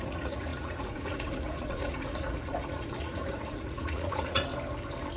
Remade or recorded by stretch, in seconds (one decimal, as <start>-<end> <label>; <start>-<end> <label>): 0.0-4.5 remade; 4.5-5.2 recorded